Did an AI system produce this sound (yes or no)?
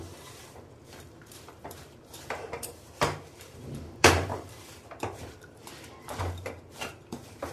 yes